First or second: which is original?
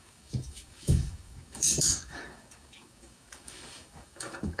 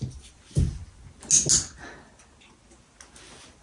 second